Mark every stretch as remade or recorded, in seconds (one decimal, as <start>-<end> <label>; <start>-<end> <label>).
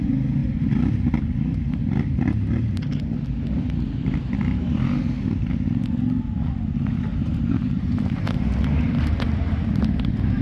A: 0.0-0.4 recorded; 0.4-1.2 remade; 1.2-4.0 recorded; 4.0-4.6 remade; 4.6-7.1 recorded; 7.1-10.4 remade